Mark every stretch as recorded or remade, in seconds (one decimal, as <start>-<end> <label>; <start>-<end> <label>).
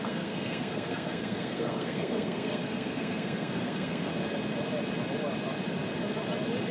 0.0-4.1 remade; 4.1-6.7 recorded